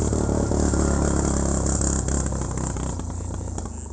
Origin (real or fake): real